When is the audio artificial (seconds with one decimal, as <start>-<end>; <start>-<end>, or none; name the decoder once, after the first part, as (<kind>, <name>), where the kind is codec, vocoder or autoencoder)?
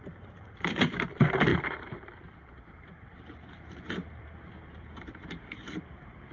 0.0-6.3 (vocoder, BigVGAN v2)